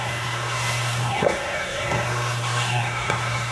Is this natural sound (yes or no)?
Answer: no